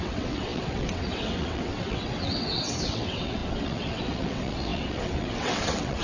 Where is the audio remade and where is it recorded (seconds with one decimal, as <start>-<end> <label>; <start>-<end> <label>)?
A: 0.0-6.0 remade